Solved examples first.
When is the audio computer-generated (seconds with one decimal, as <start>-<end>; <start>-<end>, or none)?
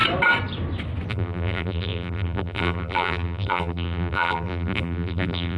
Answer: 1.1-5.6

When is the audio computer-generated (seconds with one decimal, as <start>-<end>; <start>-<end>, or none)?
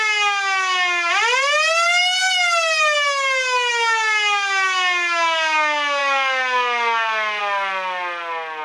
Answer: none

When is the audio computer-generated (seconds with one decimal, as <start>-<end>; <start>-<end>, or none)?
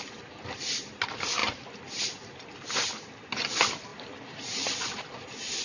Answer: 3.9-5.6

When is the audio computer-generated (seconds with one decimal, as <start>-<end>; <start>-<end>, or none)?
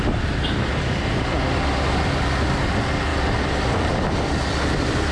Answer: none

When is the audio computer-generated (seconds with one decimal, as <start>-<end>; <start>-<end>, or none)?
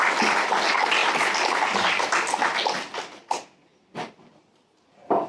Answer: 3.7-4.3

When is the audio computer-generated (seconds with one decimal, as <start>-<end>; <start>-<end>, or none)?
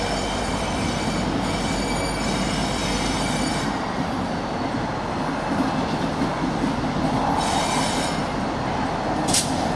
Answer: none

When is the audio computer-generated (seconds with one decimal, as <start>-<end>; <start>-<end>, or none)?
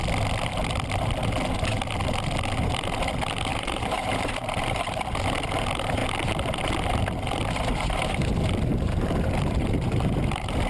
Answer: 3.5-4.8; 8.7-10.7